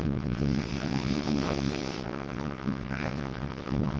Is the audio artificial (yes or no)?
yes